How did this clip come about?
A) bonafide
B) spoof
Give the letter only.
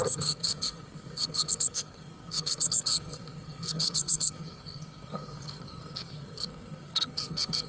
B